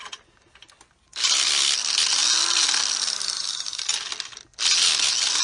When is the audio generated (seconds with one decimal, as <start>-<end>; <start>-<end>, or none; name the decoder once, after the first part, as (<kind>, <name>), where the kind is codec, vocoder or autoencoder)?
none